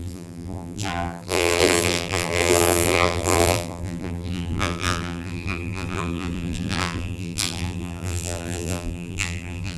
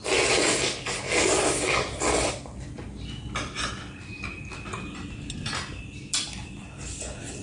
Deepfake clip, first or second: first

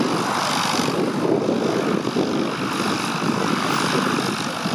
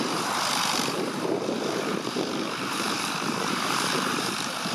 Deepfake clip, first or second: second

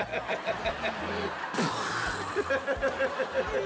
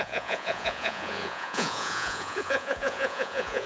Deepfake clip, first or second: second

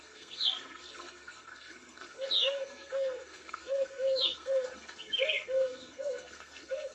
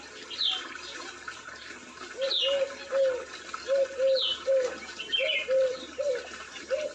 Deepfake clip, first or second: first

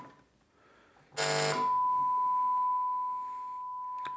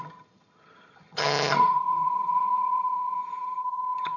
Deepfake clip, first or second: second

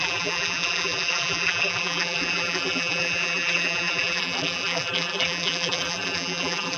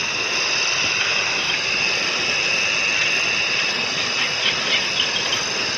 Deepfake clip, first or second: first